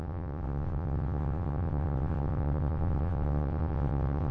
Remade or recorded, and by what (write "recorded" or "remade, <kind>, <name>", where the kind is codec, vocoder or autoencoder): remade, vocoder, WaveNeXt